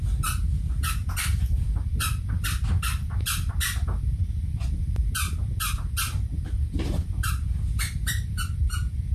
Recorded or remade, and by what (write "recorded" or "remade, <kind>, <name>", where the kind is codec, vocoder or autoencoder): recorded